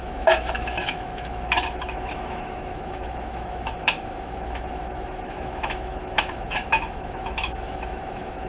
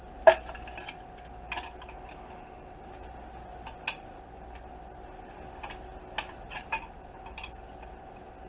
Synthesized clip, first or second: first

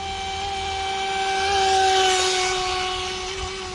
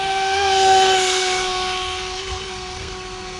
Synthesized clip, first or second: second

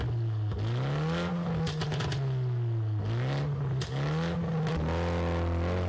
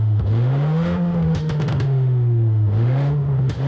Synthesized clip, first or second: second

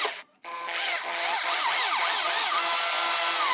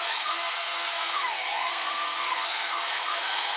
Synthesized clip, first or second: second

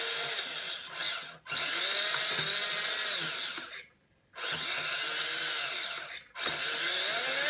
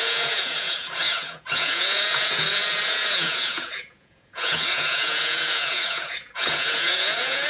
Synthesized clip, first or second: second